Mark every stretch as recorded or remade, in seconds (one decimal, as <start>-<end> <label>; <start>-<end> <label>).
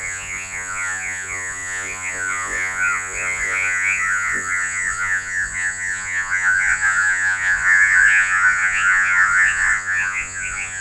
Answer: 0.0-10.8 remade